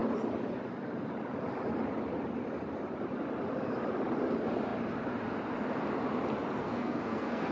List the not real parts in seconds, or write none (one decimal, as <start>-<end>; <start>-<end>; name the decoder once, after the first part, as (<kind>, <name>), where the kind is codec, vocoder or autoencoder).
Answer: 6.6-7.5 (codec, SNAC)